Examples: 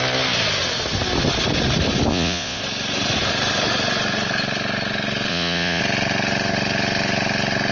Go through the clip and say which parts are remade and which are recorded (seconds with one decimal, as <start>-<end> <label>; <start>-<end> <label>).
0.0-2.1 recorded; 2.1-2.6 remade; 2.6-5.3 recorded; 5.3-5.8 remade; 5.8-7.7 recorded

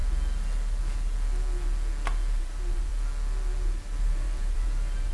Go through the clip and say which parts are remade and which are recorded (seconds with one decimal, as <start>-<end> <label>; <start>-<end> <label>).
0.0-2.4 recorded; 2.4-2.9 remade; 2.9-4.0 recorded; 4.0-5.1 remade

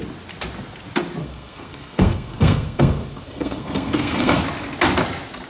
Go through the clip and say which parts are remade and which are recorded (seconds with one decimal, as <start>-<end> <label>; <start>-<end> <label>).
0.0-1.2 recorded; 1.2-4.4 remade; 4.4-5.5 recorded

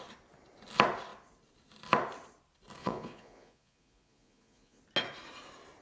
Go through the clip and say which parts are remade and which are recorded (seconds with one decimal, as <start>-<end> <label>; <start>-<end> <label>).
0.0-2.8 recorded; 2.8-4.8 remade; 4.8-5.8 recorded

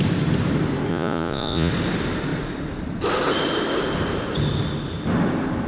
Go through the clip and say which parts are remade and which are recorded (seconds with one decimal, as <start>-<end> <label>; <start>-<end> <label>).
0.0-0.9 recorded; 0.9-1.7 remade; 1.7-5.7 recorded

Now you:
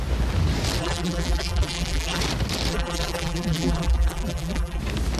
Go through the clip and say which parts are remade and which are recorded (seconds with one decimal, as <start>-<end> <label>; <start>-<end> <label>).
0.0-0.8 recorded; 0.8-2.2 remade; 2.2-2.7 recorded; 2.7-4.8 remade; 4.8-5.2 recorded

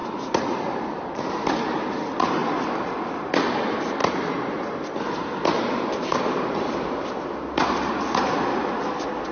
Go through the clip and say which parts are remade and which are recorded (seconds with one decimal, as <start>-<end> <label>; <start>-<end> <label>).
0.0-9.3 recorded

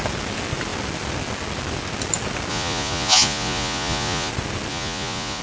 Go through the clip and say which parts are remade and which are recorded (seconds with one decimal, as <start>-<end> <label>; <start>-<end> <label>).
0.0-2.5 recorded; 2.5-4.3 remade; 4.3-4.7 recorded; 4.7-5.4 remade